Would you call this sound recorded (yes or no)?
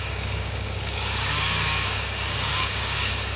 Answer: no